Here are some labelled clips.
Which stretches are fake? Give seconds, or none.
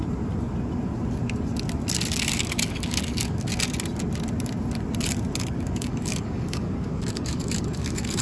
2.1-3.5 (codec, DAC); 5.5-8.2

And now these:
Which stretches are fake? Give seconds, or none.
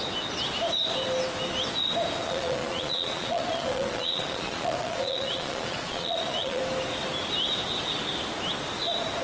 2.2-6.6 (vocoder, Vocos)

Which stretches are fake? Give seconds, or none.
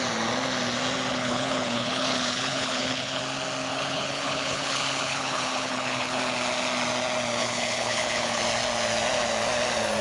1.1-3.2 (codec, HILCodec); 3.7-6.2; 7.4-8.4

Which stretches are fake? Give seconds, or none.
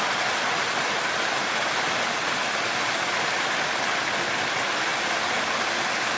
4.9-5.5 (vocoder, BigVGAN v2)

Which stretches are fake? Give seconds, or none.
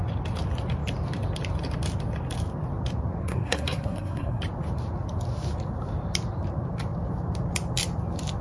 3.2-4.4 (codec, SNAC)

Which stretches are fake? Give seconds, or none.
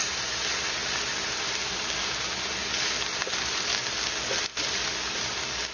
none